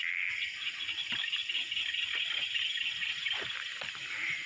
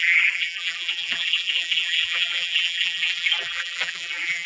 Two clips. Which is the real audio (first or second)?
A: first